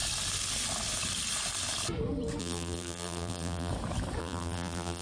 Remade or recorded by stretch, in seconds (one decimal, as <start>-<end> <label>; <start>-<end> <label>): 0.0-2.4 recorded; 2.4-3.7 remade; 3.7-4.2 recorded; 4.2-5.0 remade